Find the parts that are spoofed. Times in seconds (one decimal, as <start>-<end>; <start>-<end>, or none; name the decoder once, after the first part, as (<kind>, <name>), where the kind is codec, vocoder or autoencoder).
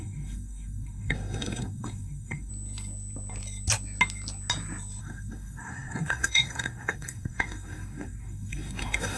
0.0-2.5 (codec, SNAC); 5.0-9.2